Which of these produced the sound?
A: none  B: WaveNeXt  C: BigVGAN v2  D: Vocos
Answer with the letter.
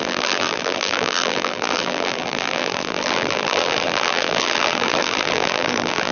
C